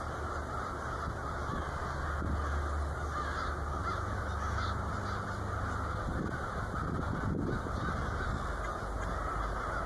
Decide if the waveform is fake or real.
real